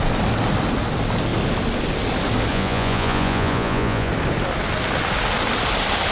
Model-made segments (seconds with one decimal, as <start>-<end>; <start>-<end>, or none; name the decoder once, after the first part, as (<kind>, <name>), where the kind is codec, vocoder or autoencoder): 2.5-4.1 (vocoder, Vocos)